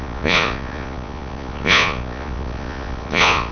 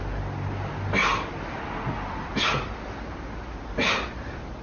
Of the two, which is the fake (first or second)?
first